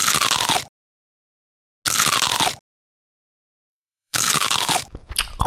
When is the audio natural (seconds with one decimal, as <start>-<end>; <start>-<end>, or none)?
0.0-3.3; 5.1-5.5